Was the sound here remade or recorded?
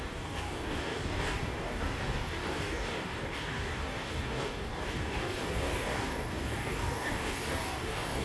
remade